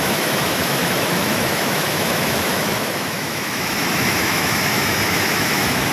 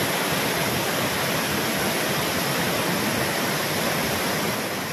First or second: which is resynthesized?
first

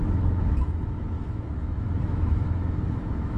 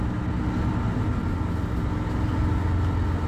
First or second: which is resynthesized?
first